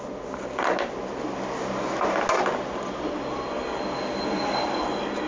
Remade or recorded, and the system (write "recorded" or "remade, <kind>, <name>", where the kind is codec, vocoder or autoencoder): recorded